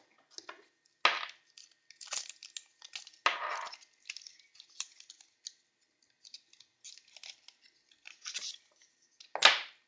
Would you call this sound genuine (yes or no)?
yes